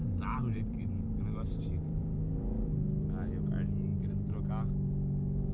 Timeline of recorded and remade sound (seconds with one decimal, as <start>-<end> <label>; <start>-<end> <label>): 0.0-2.2 remade; 2.2-3.9 recorded; 3.9-4.4 remade; 4.4-5.5 recorded